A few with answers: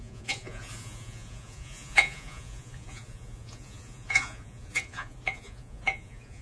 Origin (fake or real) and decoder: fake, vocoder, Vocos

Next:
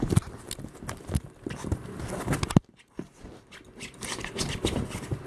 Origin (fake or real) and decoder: real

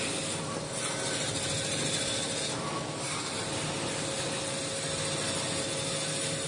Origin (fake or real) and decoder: real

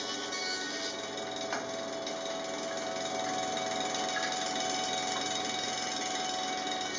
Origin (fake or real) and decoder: real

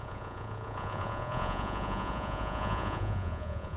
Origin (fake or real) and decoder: fake, vocoder, Vocos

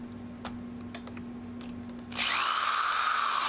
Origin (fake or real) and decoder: real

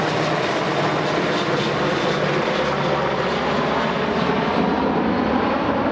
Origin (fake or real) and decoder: real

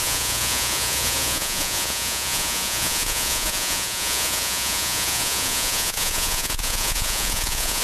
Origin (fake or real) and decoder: fake, vocoder, Vocos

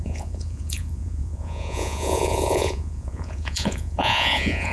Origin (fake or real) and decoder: fake, vocoder, Vocos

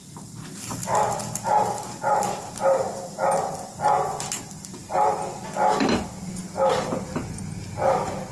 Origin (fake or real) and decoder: real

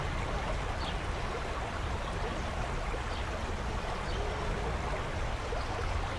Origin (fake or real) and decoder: real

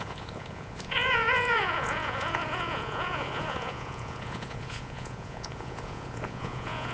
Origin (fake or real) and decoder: fake, vocoder, Vocos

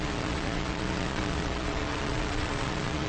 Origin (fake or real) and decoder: fake, vocoder, Vocos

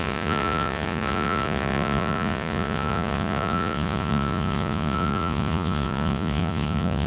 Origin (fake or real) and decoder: fake, vocoder, Vocos